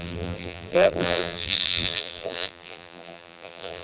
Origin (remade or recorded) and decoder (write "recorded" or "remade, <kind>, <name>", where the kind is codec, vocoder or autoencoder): remade, vocoder, BigVGAN v2